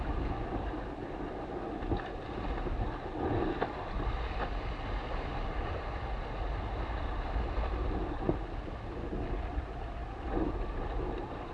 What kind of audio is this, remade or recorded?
recorded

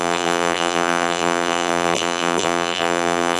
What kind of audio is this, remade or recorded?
remade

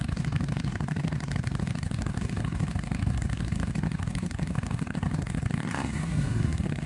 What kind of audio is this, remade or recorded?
remade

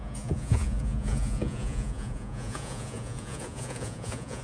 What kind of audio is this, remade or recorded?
remade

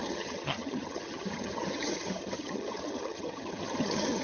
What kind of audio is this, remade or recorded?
remade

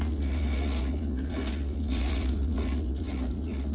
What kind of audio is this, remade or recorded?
remade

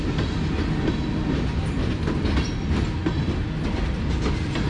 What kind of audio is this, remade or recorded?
recorded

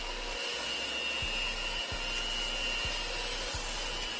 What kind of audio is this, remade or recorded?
recorded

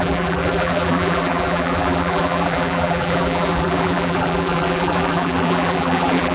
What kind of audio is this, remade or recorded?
remade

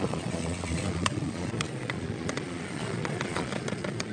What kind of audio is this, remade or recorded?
remade